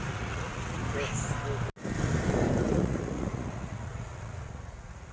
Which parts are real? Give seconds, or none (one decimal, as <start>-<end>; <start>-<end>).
0.8-2.6